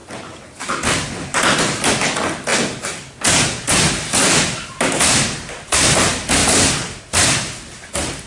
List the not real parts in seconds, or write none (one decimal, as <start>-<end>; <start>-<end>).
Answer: 0.0-1.6